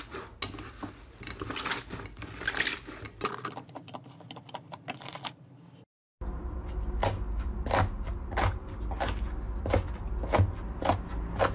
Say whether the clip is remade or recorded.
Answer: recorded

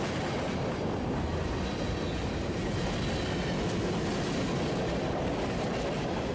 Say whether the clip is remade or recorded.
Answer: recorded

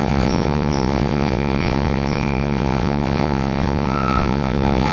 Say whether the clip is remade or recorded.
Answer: remade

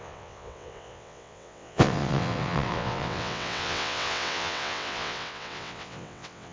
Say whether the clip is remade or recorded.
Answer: remade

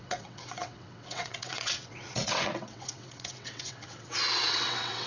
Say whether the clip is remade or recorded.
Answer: remade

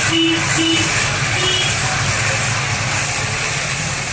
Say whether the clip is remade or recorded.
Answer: recorded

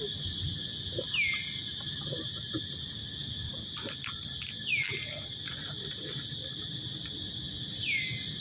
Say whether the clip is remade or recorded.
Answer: recorded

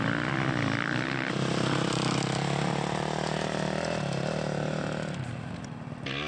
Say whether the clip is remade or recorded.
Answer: recorded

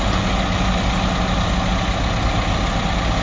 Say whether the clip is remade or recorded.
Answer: recorded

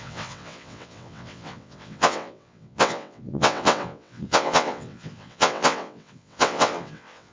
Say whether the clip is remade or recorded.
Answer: remade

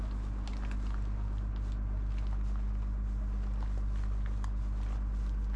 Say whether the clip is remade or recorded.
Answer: recorded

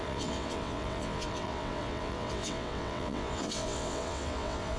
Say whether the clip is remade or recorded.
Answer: remade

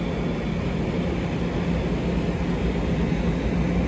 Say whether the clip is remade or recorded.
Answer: recorded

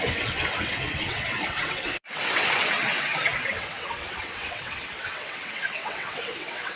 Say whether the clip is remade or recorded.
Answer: remade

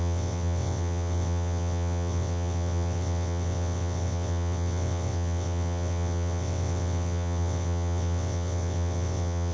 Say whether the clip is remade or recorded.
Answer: remade